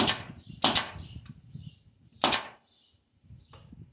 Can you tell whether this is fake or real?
real